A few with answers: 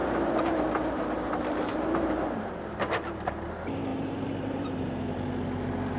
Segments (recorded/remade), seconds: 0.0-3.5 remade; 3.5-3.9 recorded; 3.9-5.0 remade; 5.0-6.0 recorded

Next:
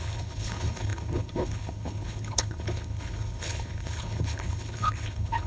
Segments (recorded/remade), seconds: 0.0-5.5 remade

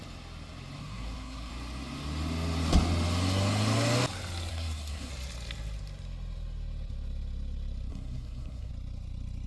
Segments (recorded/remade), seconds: 0.0-0.8 recorded; 0.8-1.5 remade; 1.5-4.5 recorded; 4.5-5.1 remade; 5.1-7.9 recorded; 7.9-8.7 remade; 8.7-9.5 recorded

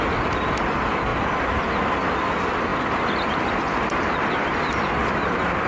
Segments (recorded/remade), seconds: 0.0-5.7 recorded

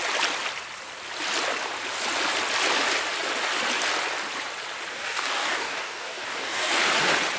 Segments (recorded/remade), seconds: 0.0-4.9 recorded; 4.9-6.7 remade; 6.7-7.4 recorded

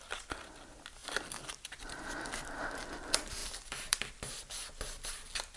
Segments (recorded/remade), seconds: 0.0-1.0 recorded; 1.0-1.9 remade; 1.9-3.4 recorded; 3.4-4.3 remade; 4.3-5.6 recorded